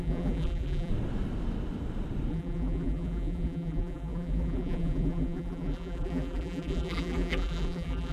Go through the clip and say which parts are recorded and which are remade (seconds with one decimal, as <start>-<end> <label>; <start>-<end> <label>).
0.0-0.9 remade; 0.9-2.3 recorded; 2.3-8.1 remade